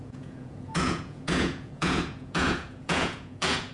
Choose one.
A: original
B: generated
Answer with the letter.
B